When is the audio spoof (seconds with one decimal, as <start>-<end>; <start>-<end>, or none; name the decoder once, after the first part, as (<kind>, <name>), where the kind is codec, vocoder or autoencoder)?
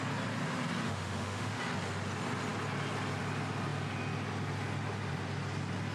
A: 0.8-1.6 (autoencoder, DAC-VAE)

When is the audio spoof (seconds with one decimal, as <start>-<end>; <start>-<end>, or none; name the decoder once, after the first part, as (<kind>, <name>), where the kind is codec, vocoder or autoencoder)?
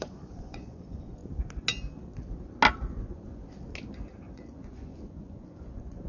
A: 0.0-1.2 (vocoder, Vocos); 2.8-3.4; 4.2-6.1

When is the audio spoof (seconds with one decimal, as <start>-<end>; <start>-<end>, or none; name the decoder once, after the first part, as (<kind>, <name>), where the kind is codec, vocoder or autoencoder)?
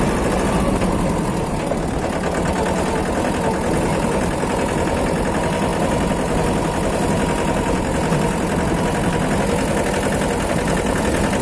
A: none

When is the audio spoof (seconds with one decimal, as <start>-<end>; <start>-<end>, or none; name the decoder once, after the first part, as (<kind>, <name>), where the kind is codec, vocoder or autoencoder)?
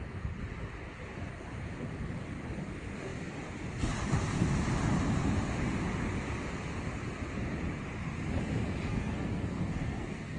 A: 8.9-10.4 (codec, SNAC)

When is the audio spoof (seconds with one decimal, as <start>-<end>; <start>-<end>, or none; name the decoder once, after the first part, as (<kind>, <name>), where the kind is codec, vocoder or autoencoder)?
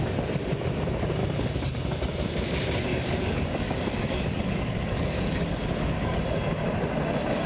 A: 1.2-1.7 (codec, DAC); 2.9-6.2